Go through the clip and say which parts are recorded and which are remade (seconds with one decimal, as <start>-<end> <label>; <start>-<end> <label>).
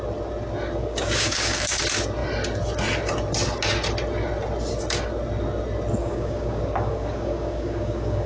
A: 0.0-0.8 recorded; 0.8-1.8 remade; 1.8-6.0 recorded; 6.0-8.3 remade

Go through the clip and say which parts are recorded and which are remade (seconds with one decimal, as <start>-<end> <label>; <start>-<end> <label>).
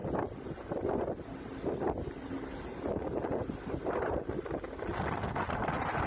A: 0.0-6.1 recorded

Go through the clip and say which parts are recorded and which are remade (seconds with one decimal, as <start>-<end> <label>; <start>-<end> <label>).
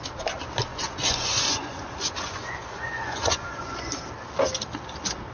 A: 0.0-0.7 recorded; 0.7-3.9 remade; 3.9-5.3 recorded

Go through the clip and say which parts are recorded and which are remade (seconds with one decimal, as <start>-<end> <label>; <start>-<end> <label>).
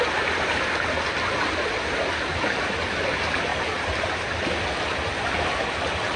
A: 0.0-6.2 recorded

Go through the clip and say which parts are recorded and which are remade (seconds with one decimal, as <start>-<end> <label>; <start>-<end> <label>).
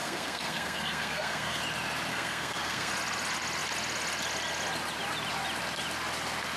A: 0.0-1.6 remade; 1.6-2.1 recorded; 2.1-2.9 remade; 2.9-6.6 recorded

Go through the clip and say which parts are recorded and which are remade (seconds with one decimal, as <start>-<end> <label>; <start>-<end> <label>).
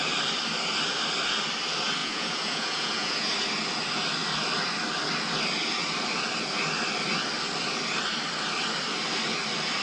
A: 0.0-2.0 recorded; 2.0-3.3 remade; 3.3-9.8 recorded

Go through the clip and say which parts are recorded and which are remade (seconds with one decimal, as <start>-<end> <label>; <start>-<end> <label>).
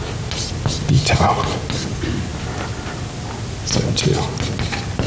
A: 0.0-5.1 recorded